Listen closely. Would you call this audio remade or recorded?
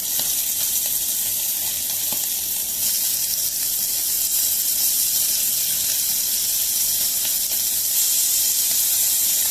recorded